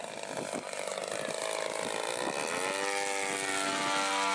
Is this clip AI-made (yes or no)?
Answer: no